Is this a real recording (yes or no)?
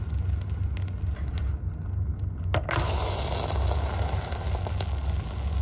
yes